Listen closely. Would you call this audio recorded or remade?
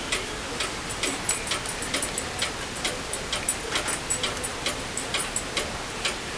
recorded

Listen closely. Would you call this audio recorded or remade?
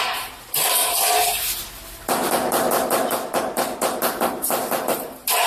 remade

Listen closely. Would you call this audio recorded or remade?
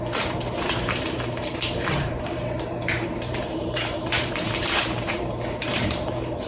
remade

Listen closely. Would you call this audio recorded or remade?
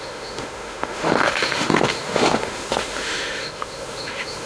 remade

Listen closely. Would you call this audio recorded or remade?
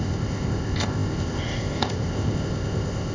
remade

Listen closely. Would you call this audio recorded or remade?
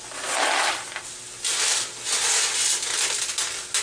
recorded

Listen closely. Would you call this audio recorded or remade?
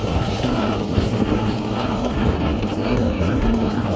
remade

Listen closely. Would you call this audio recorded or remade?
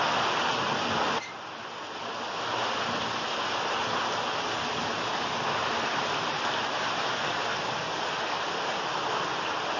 recorded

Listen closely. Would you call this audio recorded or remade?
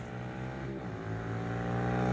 recorded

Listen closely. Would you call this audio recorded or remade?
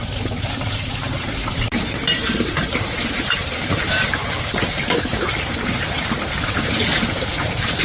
remade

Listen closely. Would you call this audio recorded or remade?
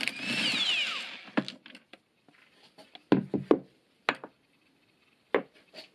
recorded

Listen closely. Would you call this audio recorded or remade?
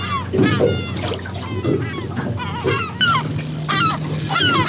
recorded